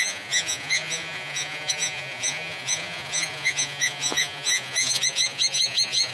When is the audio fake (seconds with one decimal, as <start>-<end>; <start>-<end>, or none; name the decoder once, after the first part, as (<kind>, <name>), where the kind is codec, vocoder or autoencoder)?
0.0-6.1 (vocoder, Vocos)